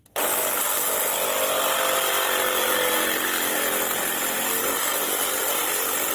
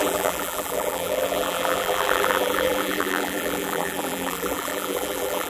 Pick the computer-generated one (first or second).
second